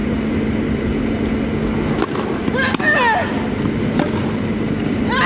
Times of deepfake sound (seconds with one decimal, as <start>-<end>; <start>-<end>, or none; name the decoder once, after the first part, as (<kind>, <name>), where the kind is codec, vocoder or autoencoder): none